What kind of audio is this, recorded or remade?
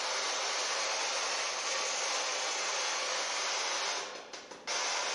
recorded